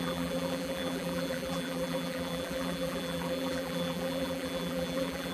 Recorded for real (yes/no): no